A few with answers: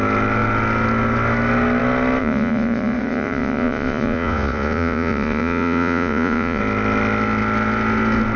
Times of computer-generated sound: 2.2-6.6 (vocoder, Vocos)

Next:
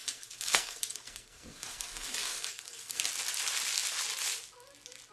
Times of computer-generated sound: 0.0-3.1 (codec, SNAC)